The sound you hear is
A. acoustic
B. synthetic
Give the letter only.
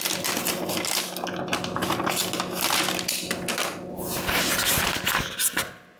A